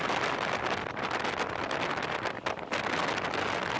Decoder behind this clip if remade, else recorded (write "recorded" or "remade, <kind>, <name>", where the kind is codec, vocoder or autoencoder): recorded